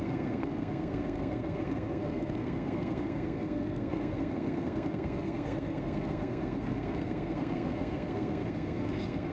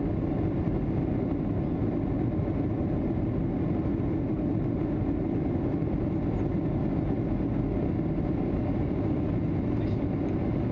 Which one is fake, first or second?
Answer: first